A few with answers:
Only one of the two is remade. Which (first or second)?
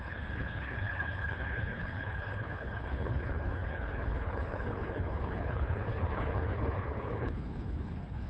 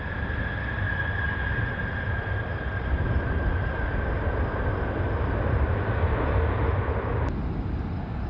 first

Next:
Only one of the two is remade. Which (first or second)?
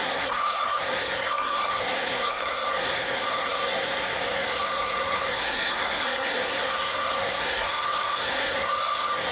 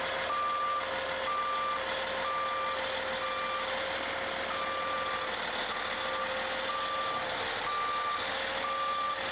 first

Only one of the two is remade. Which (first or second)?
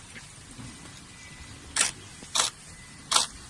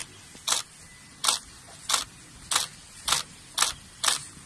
first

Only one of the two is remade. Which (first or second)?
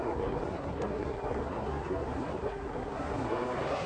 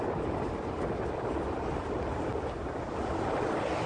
first